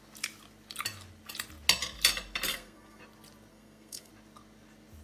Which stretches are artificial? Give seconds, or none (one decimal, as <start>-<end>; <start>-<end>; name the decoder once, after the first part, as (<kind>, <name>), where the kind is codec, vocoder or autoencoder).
2.5-3.0 (codec, SNAC); 3.5-4.1